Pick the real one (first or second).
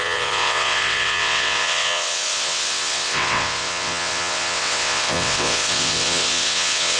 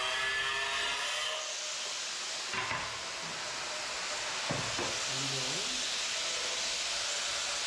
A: second